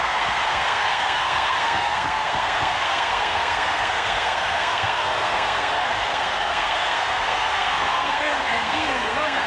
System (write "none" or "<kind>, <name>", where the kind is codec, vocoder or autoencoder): codec, SNAC